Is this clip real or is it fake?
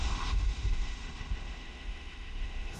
fake